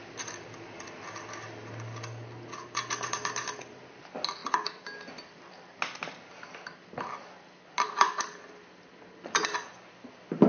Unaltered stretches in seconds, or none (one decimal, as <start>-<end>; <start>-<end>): 0.0-10.5